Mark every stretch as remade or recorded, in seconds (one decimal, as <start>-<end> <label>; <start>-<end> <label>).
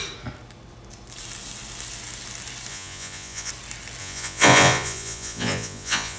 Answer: 0.0-2.7 recorded; 2.7-3.5 remade; 3.5-4.0 recorded; 4.0-6.2 remade